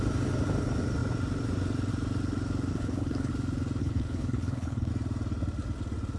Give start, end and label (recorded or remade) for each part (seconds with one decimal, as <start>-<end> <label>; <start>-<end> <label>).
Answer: 0.0-2.7 recorded; 2.7-3.3 remade; 3.3-3.8 recorded; 3.8-4.9 remade; 4.9-6.2 recorded